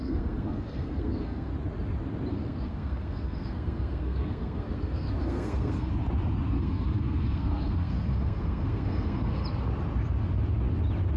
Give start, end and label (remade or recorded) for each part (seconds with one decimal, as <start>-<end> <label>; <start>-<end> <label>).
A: 0.0-1.5 remade; 1.5-2.3 recorded; 2.3-5.9 remade; 5.9-6.5 recorded; 6.5-9.4 remade; 9.4-11.2 recorded